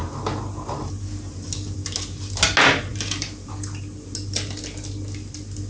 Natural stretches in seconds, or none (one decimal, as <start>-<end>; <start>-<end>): 0.9-2.9; 3.5-5.7